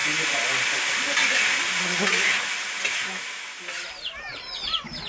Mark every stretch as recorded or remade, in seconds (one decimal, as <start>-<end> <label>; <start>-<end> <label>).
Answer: 0.0-5.1 recorded